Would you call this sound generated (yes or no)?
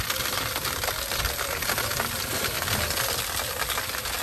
no